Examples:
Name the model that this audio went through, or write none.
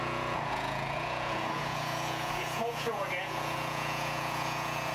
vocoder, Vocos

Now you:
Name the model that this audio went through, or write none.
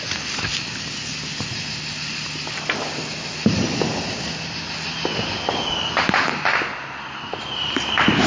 none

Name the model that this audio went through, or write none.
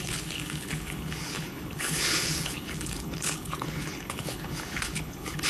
codec, HILCodec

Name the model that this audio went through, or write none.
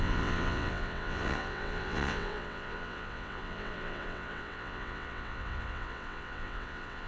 vocoder, WaveNeXt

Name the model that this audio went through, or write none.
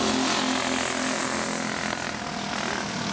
none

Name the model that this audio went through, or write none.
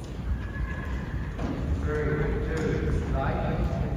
none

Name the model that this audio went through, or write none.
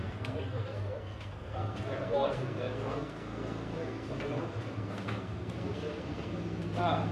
codec, SNAC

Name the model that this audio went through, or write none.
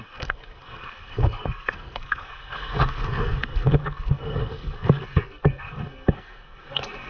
codec, SNAC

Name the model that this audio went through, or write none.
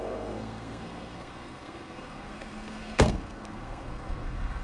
codec, SNAC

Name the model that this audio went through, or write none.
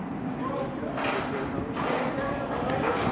none